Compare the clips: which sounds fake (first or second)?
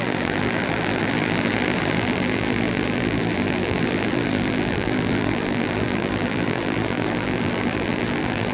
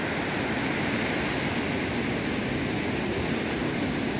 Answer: first